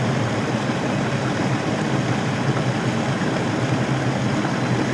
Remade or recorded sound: recorded